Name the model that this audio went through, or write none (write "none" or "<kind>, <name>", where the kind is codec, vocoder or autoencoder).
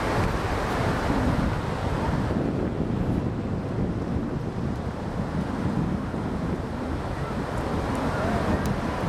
none